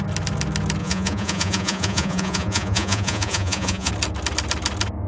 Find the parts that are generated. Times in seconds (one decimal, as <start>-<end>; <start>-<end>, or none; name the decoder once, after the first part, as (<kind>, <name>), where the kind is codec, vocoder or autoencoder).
0.8-3.9 (vocoder, Vocos)